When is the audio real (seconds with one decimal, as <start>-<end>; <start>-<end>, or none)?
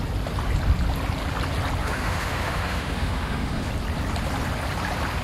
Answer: 0.0-1.8; 3.7-5.2